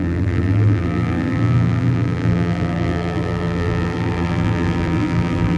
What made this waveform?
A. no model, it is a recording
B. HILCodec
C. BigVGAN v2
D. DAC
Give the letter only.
C